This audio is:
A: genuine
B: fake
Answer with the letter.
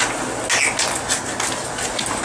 A